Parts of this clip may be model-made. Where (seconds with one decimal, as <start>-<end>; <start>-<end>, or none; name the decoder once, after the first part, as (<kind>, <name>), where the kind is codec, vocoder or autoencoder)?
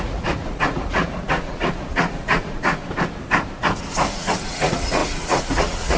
0.0-2.8 (vocoder, Vocos); 4.1-6.0